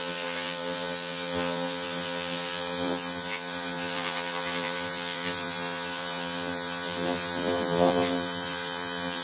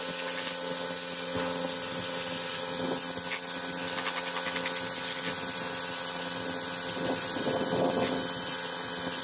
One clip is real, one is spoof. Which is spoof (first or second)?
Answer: first